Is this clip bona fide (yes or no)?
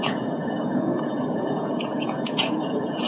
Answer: no